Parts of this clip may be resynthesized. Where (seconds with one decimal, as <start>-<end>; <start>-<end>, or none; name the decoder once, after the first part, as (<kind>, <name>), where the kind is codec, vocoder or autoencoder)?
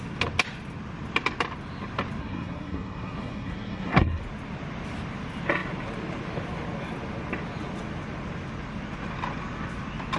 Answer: 2.2-4.2 (codec, SNAC)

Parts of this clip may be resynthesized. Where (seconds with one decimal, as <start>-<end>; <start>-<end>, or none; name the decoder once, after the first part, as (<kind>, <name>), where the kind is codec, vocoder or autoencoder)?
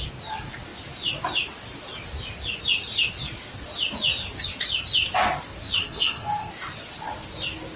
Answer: 5.8-6.5 (codec, SNAC)